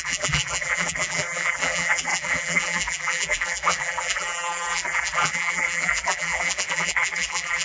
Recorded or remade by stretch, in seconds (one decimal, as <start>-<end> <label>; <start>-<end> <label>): 0.0-7.6 remade